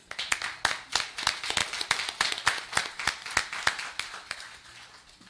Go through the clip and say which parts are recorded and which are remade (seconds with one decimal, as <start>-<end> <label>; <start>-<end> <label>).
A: 0.0-1.6 recorded; 1.6-2.3 remade; 2.3-5.3 recorded